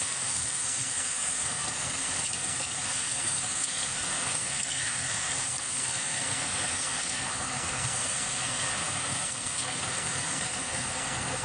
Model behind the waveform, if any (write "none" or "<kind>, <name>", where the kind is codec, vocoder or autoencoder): codec, SNAC